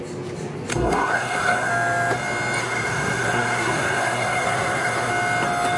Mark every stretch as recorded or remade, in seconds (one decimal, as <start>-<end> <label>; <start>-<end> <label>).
0.0-0.7 recorded; 0.7-1.7 remade; 1.7-2.6 recorded; 2.6-5.1 remade; 5.1-5.8 recorded